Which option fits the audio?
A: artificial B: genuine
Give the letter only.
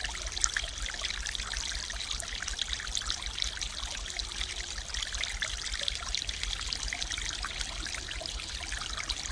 B